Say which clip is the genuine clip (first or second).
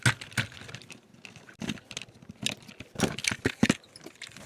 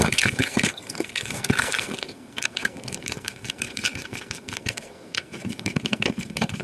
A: first